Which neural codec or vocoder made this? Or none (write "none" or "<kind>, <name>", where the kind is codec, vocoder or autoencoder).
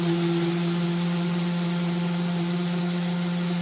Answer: none